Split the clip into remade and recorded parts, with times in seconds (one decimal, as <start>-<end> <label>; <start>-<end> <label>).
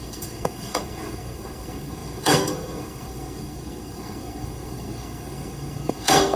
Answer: 0.0-6.4 remade